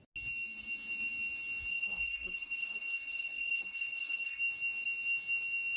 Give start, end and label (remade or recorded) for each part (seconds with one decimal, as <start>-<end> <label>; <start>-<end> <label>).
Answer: 0.0-1.7 recorded; 1.7-4.4 remade; 4.4-5.8 recorded